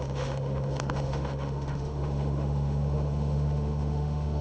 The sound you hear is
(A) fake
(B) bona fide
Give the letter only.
A